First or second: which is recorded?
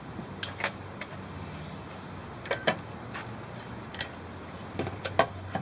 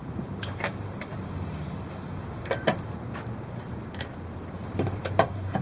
first